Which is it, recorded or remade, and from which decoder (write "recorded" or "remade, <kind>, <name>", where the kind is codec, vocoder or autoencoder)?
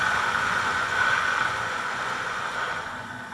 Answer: remade, vocoder, Vocos